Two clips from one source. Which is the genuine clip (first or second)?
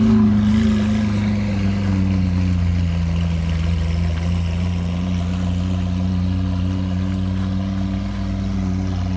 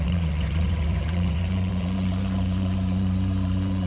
first